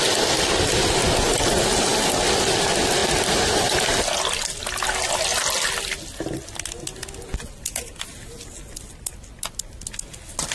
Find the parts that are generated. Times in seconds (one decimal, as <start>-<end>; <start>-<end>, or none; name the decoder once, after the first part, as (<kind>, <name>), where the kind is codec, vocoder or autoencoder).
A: none